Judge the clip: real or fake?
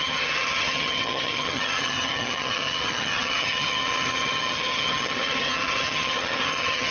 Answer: fake